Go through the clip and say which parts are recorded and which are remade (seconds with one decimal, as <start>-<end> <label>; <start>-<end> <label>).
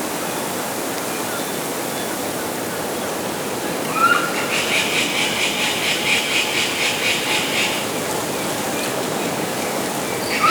0.0-8.9 recorded; 8.9-9.8 remade; 9.8-10.5 recorded